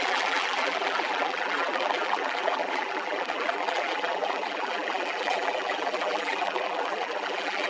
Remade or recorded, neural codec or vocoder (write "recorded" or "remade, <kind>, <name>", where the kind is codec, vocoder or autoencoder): remade, vocoder, BigVGAN v2